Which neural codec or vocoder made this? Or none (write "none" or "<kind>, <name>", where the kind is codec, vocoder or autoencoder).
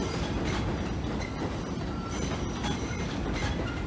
none